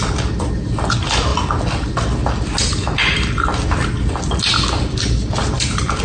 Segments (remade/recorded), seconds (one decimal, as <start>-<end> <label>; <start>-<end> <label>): 0.0-6.0 recorded